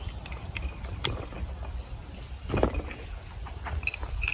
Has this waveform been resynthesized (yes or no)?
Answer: no